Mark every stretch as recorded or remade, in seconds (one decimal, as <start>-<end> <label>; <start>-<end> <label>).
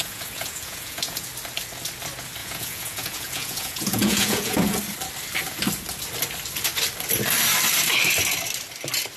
0.0-1.3 remade; 1.3-2.4 recorded; 2.4-4.8 remade; 4.8-9.2 recorded